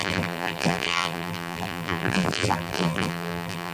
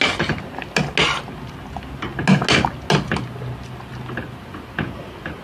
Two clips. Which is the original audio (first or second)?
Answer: second